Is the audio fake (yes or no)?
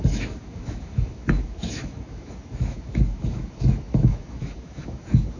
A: yes